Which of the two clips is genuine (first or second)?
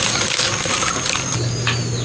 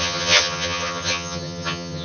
first